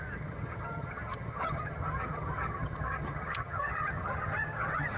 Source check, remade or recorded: remade